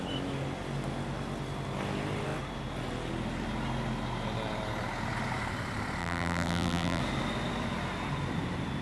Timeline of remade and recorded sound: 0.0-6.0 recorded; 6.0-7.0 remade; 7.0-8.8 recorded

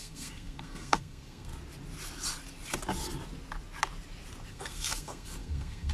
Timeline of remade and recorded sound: 0.0-1.5 remade; 1.5-4.5 recorded; 4.5-5.9 remade

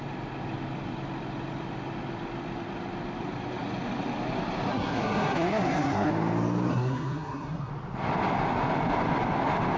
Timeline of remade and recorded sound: 0.0-4.7 recorded; 4.7-6.1 remade; 6.1-6.7 recorded; 6.7-7.7 remade; 7.7-9.8 recorded

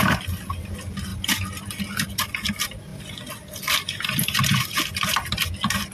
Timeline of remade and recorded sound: 0.0-5.9 recorded

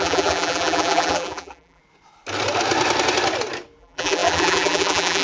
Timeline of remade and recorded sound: 0.0-1.8 remade; 1.8-3.8 recorded; 3.8-5.2 remade

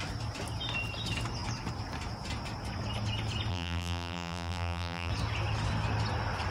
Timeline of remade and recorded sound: 0.0-3.5 recorded; 3.5-5.1 remade; 5.1-6.5 recorded

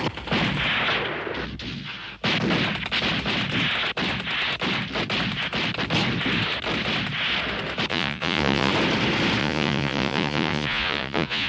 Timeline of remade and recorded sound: 0.0-7.9 recorded; 7.9-8.7 remade; 8.7-9.4 recorded; 9.4-11.5 remade

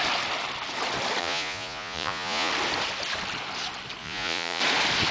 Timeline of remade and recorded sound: 0.0-1.2 recorded; 1.2-2.5 remade; 2.5-4.0 recorded; 4.0-4.6 remade; 4.6-5.1 recorded